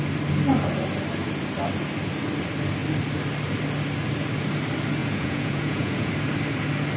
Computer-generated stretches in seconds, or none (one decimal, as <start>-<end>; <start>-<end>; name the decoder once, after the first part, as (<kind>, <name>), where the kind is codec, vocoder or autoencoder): 5.0-6.1 (vocoder, Vocos)